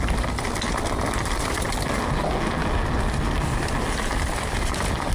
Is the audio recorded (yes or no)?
yes